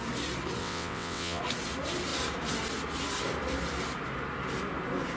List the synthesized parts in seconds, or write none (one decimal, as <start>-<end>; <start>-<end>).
0.6-1.4